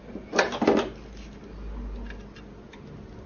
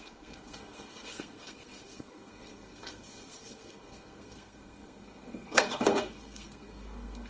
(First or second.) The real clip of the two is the first